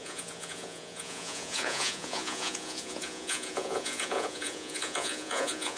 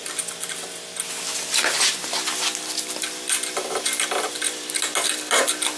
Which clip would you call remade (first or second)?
first